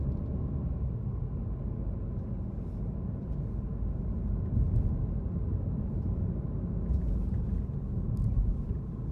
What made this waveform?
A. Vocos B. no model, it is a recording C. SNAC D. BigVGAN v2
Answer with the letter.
B